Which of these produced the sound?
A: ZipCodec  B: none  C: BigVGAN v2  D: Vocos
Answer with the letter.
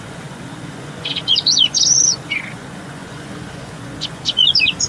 D